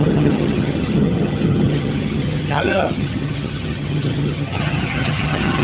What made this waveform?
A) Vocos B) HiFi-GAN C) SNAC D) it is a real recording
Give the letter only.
B